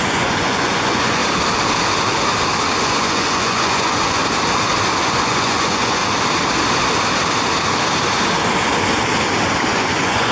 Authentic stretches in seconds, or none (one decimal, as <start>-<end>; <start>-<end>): 1.2-2.8; 4.2-5.0; 6.0-9.7